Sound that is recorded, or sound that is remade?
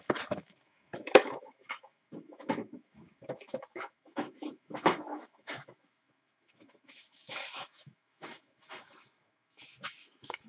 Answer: remade